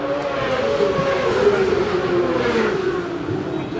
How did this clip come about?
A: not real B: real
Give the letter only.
B